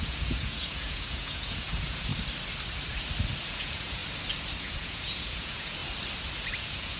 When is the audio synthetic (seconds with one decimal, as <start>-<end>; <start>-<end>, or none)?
0.0-2.1; 3.5-4.0; 4.6-5.8; 6.6-7.0